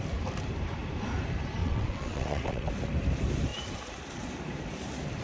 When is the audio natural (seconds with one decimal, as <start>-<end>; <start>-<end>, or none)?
0.0-1.6; 2.7-5.2